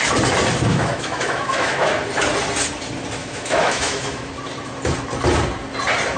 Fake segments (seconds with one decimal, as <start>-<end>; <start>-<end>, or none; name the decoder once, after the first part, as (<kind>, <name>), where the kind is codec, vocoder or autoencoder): 0.7-1.9 (autoencoder, DAC-VAE); 3.2-4.3